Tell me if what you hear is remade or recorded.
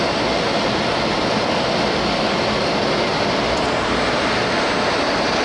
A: recorded